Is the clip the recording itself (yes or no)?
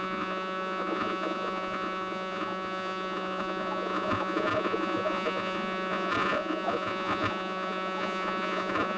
no